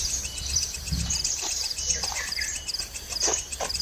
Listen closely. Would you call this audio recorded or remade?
remade